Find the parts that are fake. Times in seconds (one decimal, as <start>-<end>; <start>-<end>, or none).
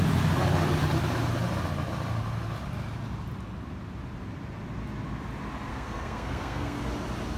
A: 5.7-6.8